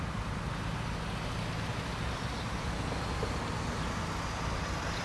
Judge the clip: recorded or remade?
recorded